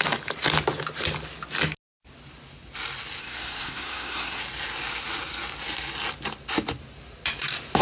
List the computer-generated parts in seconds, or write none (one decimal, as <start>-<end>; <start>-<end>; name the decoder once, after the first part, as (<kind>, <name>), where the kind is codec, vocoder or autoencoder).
3.2-4.4 (codec, SNAC)